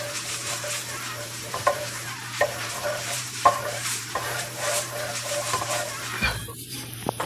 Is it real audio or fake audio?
fake